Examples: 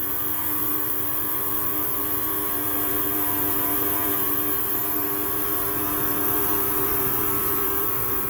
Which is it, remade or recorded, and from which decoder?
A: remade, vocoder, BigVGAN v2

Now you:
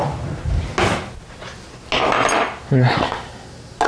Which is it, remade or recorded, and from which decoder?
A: recorded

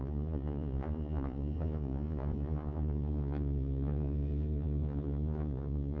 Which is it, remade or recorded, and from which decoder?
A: remade, vocoder, Vocos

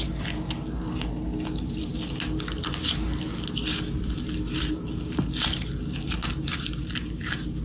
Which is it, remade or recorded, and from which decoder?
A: recorded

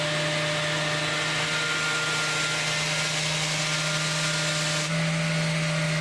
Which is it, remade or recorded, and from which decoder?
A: recorded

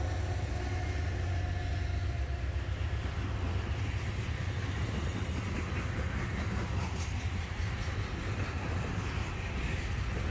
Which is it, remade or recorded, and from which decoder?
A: recorded